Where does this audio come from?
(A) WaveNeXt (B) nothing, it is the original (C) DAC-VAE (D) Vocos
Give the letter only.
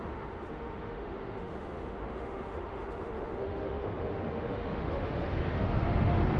C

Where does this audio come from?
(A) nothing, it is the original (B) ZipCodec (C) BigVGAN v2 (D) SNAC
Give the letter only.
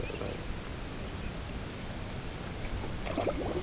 A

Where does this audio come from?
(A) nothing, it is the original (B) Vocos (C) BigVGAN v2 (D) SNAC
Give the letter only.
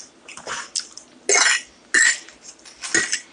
A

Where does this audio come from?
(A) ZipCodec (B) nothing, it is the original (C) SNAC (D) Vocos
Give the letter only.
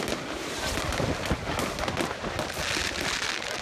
B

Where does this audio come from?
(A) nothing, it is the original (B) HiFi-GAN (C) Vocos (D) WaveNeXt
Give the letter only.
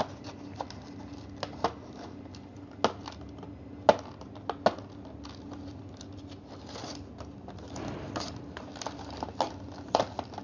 A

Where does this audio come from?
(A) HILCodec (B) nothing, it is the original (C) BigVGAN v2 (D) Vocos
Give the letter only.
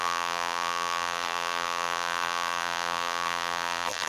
C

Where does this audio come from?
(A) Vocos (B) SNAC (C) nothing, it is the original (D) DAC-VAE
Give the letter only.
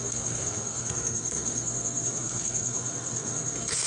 B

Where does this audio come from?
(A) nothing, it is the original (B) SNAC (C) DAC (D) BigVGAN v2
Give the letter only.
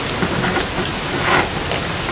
A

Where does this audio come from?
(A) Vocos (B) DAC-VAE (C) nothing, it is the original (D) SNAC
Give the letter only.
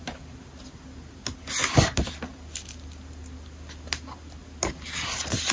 C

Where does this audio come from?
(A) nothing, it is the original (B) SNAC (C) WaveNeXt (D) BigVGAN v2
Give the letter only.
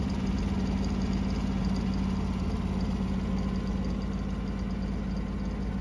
A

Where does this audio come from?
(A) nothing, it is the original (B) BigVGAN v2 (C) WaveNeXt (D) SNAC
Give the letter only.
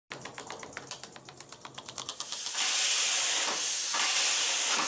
A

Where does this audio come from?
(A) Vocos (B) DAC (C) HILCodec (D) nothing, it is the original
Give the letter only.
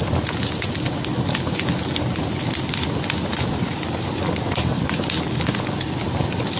D